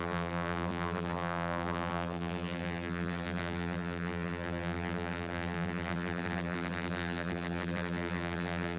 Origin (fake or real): fake